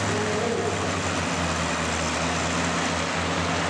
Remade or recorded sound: recorded